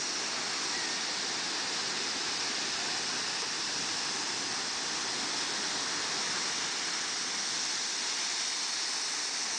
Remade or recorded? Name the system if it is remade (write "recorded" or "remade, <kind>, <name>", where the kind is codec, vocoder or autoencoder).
recorded